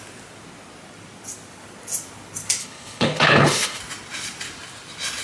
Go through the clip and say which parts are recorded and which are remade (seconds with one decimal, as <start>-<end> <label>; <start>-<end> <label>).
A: 0.0-2.6 recorded; 2.6-3.8 remade; 3.8-5.2 recorded